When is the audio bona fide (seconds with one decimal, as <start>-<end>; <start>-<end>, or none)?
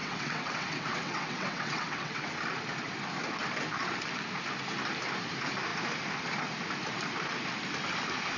2.3-8.4